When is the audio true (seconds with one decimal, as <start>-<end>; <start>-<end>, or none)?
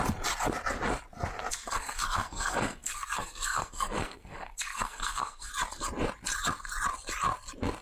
0.0-1.5; 5.5-7.8